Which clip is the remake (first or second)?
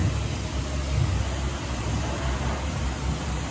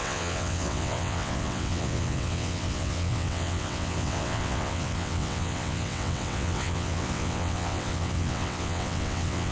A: second